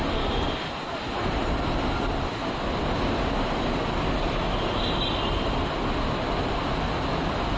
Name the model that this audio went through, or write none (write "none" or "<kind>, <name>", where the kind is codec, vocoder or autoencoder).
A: none